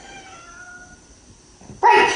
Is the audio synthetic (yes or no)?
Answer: no